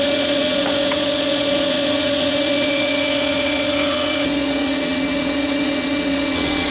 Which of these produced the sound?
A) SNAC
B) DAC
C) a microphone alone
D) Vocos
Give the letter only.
D